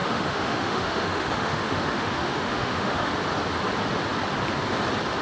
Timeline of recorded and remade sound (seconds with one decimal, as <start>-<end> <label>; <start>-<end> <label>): 0.0-3.1 remade; 3.1-5.2 recorded